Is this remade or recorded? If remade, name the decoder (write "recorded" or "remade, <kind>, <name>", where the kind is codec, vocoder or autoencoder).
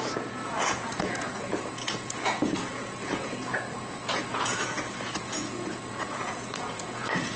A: remade, vocoder, Vocos